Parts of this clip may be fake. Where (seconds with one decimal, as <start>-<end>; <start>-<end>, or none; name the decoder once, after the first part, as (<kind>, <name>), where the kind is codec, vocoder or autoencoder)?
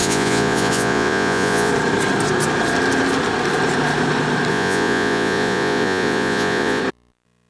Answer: 0.0-1.7 (vocoder, Vocos); 4.5-6.8